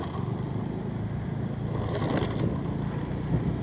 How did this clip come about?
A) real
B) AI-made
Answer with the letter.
A